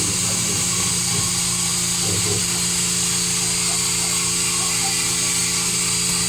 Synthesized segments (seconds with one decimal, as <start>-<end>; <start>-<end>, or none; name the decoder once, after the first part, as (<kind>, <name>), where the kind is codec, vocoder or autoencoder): 0.0-5.4 (vocoder, BigVGAN v2)